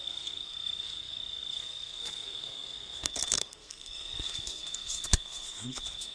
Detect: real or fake fake